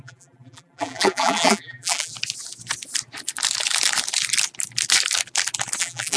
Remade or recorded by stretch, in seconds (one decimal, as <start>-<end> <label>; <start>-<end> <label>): 0.0-2.1 remade; 2.1-5.8 recorded; 5.8-6.2 remade